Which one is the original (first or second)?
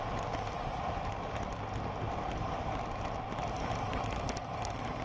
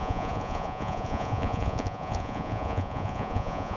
first